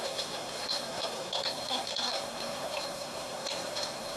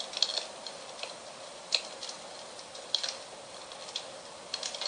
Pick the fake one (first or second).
first